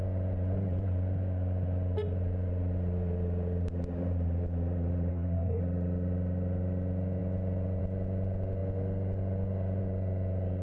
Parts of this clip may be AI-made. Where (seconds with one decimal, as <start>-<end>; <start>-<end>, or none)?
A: 5.1-5.6